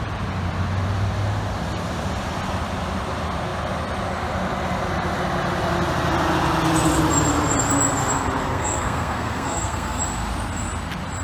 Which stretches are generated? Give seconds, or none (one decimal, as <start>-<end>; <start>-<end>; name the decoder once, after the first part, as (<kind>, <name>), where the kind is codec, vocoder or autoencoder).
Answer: 8.4-10.0 (codec, SNAC)